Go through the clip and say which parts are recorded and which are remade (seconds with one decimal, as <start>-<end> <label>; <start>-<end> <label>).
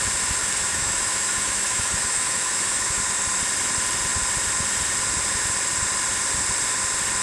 0.0-0.4 recorded; 0.4-3.0 remade; 3.0-7.2 recorded